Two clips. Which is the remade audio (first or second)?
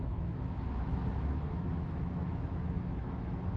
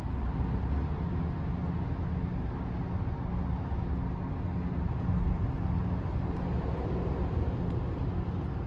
first